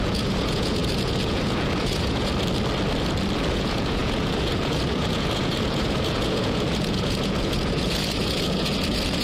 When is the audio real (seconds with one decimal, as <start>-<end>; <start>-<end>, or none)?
2.3-3.5